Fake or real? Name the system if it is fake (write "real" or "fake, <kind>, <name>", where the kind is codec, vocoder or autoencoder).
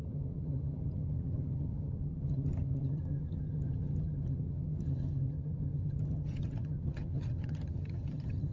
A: fake, vocoder, HiFi-GAN